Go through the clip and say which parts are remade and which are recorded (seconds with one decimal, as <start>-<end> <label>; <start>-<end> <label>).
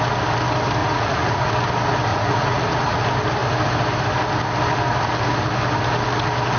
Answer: 0.0-0.8 recorded; 0.8-1.5 remade; 1.5-2.1 recorded; 2.1-3.0 remade; 3.0-6.6 recorded